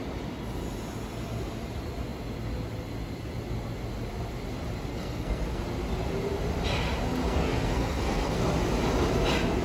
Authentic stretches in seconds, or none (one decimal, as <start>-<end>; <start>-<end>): 0.0-4.9; 5.6-7.2; 8.5-9.6